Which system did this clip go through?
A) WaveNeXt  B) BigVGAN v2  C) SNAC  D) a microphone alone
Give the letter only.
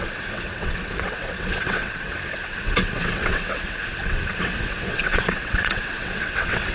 A